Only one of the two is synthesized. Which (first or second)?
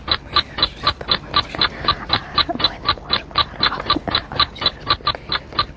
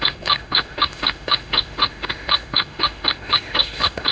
second